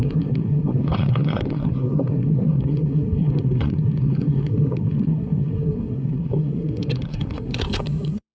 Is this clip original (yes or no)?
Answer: no